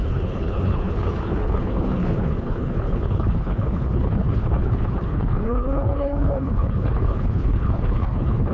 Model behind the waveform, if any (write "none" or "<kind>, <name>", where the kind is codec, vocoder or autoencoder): codec, HILCodec